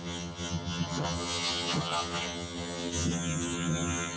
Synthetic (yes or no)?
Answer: yes